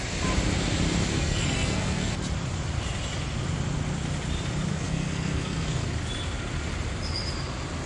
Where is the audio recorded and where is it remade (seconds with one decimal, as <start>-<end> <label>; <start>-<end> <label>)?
0.0-1.1 recorded; 1.1-2.1 remade; 2.1-4.7 recorded; 4.7-5.9 remade; 5.9-7.9 recorded